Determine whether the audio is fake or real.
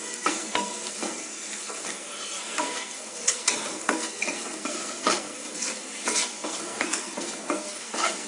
fake